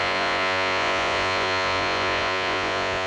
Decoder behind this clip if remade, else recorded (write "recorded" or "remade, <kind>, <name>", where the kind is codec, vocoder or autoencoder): remade, vocoder, Vocos